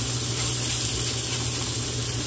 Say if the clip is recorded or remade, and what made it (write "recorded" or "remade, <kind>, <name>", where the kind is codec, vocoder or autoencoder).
recorded